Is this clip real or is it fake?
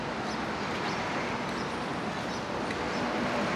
real